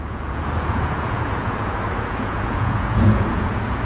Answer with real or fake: fake